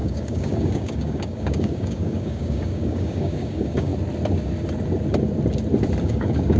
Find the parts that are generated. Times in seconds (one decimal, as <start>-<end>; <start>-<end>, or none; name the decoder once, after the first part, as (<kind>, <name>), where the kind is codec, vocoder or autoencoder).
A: 0.0-3.9 (codec, DAC); 6.0-6.6